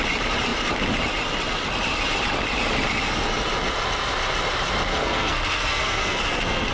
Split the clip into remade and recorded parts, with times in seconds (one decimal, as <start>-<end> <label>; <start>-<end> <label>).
0.0-4.9 recorded; 4.9-6.7 remade